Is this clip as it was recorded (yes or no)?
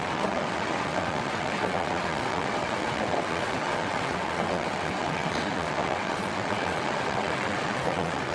no